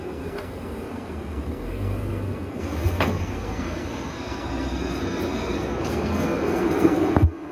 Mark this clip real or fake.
fake